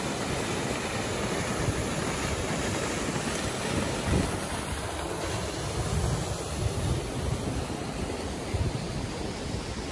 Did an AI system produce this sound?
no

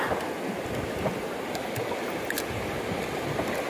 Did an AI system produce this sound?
no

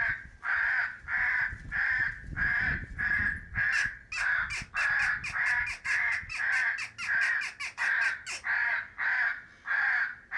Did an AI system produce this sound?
no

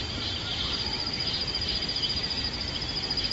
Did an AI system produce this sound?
yes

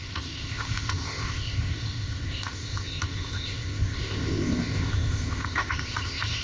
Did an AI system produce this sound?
yes